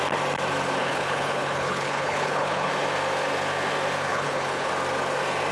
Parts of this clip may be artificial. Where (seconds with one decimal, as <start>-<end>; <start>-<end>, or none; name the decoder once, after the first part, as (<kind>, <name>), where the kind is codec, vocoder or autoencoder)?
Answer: 0.8-2.7 (codec, HILCodec); 4.1-4.7